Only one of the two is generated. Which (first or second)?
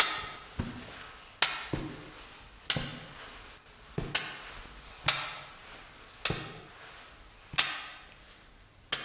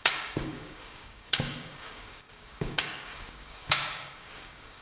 second